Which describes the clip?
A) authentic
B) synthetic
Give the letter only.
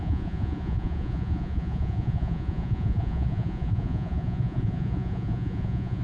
B